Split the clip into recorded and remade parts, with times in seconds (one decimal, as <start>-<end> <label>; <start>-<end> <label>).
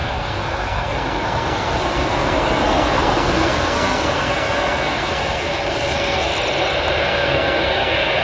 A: 0.0-6.3 remade; 6.3-7.0 recorded; 7.0-8.2 remade